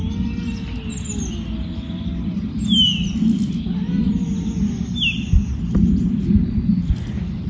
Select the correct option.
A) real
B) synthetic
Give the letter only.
A